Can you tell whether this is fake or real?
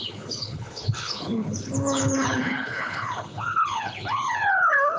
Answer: fake